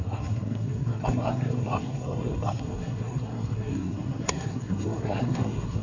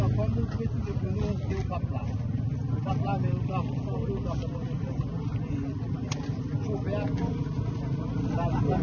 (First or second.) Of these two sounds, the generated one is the first